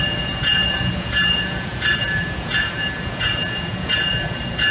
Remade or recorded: remade